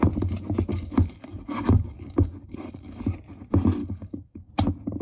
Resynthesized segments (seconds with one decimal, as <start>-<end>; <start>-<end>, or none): 0.7-3.0; 3.8-4.5